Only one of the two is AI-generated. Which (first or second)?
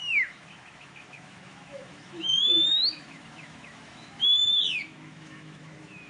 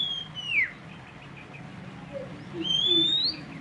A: first